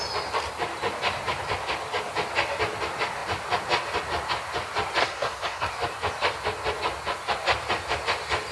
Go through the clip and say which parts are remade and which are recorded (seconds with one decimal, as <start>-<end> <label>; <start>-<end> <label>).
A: 0.0-5.0 recorded; 5.0-5.7 remade; 5.7-8.5 recorded